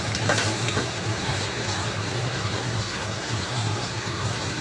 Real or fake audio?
fake